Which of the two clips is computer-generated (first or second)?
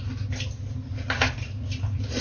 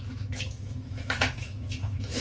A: second